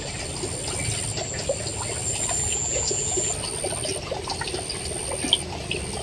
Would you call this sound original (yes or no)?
yes